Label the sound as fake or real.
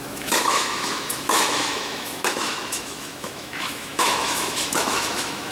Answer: fake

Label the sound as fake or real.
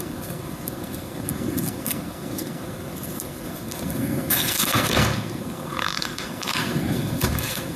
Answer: fake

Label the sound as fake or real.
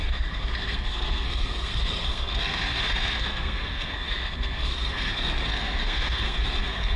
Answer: fake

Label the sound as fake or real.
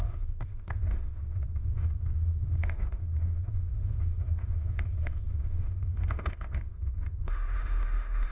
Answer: fake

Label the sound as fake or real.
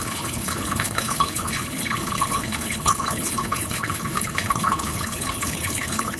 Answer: fake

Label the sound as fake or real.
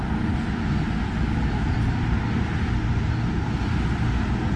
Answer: real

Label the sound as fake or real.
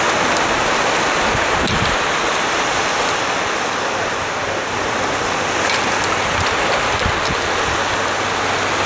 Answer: real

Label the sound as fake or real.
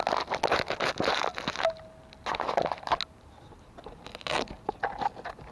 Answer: real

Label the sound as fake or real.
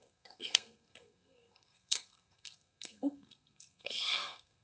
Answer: fake